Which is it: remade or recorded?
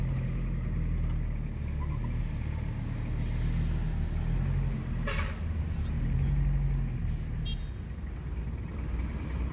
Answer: recorded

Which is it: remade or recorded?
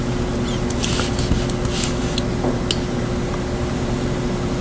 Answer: recorded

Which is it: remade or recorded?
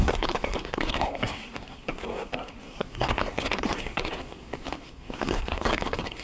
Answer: remade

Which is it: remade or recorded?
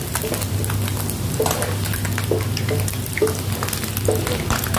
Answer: recorded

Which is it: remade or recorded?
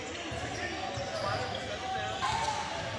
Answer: recorded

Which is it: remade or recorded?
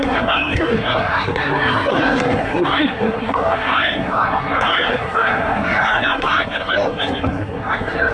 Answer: remade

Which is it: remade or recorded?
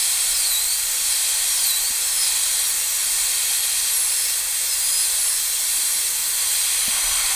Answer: recorded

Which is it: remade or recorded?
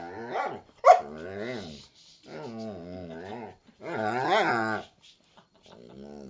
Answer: recorded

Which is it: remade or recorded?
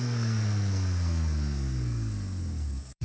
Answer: remade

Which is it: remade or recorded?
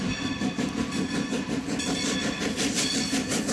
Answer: recorded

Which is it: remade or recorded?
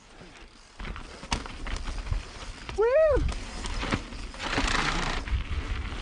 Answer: recorded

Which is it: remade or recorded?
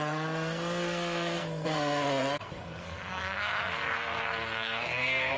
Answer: remade